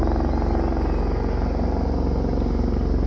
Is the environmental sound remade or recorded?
recorded